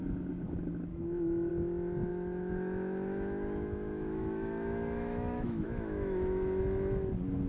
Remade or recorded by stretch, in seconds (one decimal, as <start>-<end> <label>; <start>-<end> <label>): 0.0-0.9 recorded; 0.9-1.5 remade; 1.5-2.1 recorded; 2.1-6.6 remade; 6.6-7.5 recorded